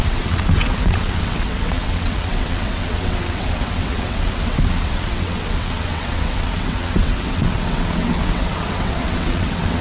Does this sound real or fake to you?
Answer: fake